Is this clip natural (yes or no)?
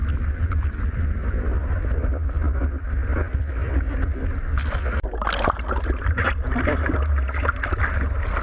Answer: yes